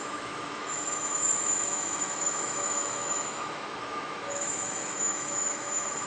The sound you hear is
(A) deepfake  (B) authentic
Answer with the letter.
A